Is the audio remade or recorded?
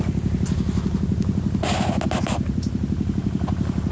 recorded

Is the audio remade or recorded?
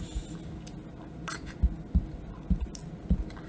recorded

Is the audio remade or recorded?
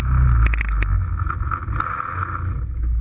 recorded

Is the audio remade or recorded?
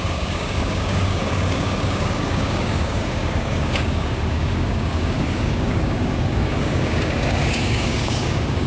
remade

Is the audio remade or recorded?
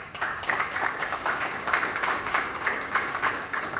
remade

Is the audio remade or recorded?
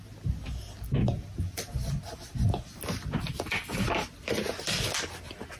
recorded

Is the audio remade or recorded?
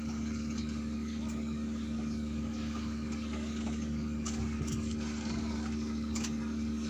remade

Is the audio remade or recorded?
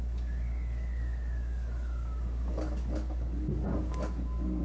remade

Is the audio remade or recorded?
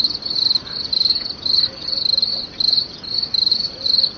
recorded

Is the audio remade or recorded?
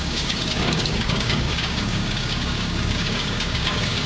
remade